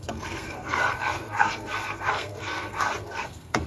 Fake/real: fake